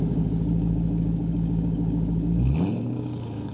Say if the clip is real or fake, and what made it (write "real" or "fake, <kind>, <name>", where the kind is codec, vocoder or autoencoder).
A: fake, codec, DAC